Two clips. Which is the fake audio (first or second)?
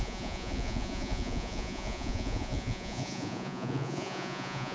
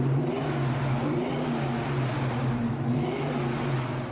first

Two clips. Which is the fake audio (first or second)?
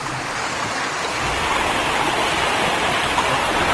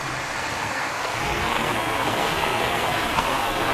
second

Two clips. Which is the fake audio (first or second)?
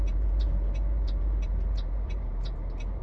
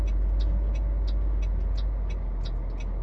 first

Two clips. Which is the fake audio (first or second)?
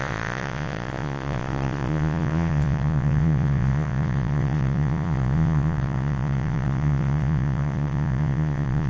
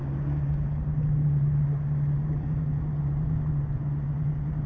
first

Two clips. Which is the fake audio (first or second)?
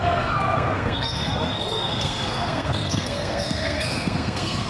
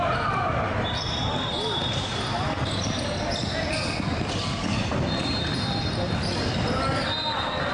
first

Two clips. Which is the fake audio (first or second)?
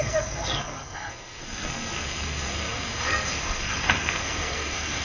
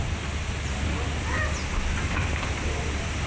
first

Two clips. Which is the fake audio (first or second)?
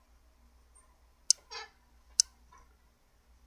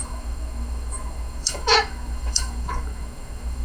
second